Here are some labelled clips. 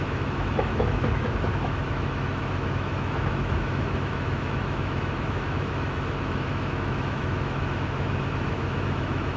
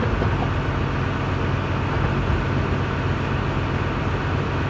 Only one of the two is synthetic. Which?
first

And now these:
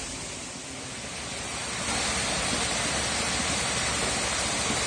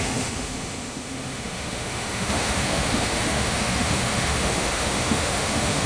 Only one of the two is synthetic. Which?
second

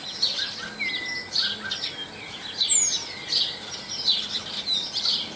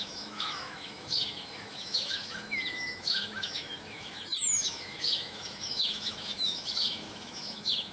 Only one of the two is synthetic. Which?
second